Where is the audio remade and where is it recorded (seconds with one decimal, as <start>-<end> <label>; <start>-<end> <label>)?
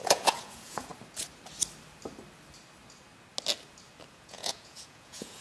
0.0-0.9 remade; 0.9-4.1 recorded; 4.1-5.4 remade